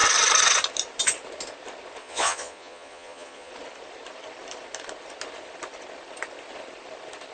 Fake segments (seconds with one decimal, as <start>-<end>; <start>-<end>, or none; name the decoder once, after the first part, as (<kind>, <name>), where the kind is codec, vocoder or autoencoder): 2.0-3.5 (vocoder, Vocos)